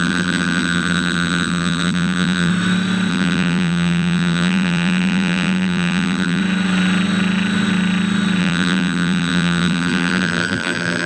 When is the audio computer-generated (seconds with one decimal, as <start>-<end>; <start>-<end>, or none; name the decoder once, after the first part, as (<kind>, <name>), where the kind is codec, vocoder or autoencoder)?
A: 0.0-2.5 (vocoder, BigVGAN v2); 3.1-6.4; 8.4-11.1